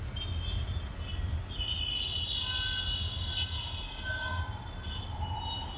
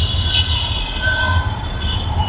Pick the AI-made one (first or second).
second